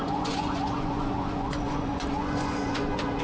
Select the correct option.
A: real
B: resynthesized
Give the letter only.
B